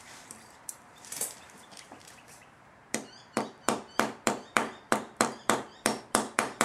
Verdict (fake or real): fake